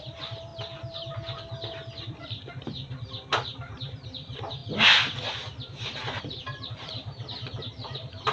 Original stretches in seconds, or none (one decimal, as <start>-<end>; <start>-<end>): 0.5-2.0; 4.6-6.2